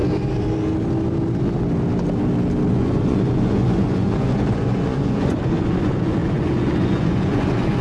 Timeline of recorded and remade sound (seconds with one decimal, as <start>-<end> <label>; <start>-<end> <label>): 0.0-2.7 recorded; 2.7-7.8 remade